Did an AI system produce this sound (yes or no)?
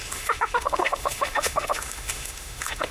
yes